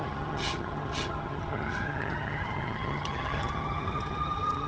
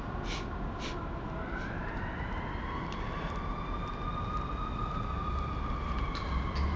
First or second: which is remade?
first